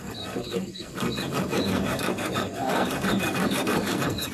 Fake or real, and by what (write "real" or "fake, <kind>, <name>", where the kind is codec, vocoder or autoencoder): fake, codec, SNAC